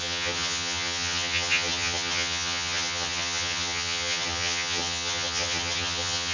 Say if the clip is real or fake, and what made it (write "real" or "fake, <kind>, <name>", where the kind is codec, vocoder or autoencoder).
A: fake, vocoder, HiFi-GAN